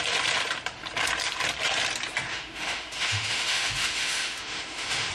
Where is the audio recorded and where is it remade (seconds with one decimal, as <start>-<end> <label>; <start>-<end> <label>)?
0.0-2.3 recorded; 2.3-5.1 remade